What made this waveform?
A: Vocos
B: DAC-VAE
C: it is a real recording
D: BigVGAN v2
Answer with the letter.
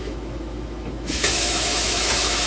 B